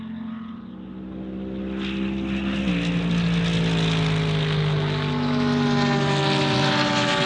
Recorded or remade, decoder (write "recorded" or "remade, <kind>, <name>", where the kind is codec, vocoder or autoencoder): recorded